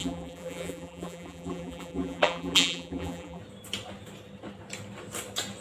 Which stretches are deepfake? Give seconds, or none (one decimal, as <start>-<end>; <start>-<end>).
0.0-3.4